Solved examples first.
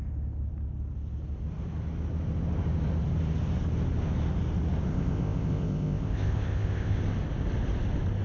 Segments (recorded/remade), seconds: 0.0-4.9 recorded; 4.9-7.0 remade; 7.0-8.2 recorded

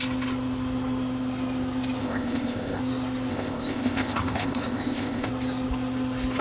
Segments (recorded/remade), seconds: 0.0-2.0 recorded; 2.0-2.8 remade; 2.8-3.3 recorded; 3.3-5.3 remade; 5.3-6.4 recorded

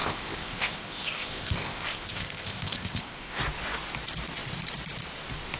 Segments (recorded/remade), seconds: 0.0-3.4 remade; 3.4-5.6 recorded